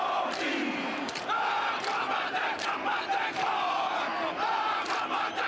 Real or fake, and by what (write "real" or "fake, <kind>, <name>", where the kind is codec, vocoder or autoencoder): fake, vocoder, BigVGAN v2